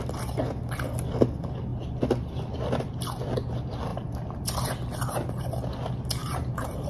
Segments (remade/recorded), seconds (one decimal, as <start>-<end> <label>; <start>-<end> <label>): 0.0-6.2 recorded; 6.2-6.9 remade